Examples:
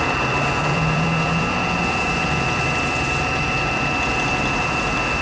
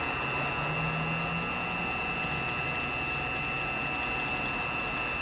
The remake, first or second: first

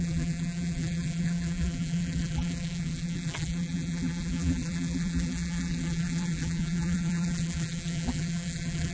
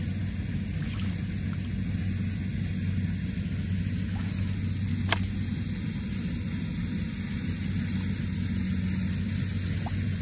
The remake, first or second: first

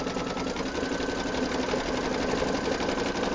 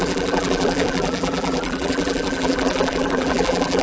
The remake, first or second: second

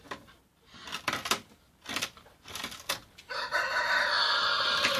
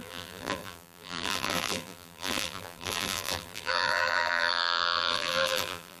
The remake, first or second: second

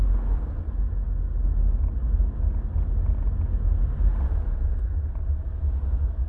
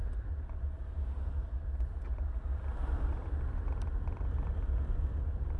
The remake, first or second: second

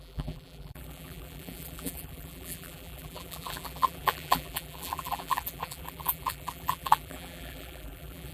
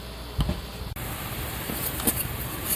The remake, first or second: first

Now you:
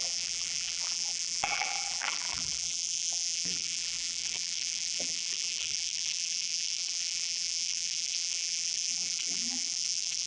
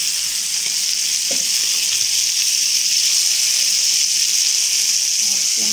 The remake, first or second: first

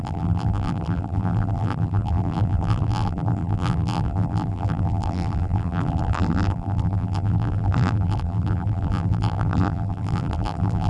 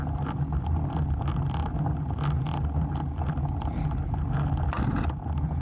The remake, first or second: first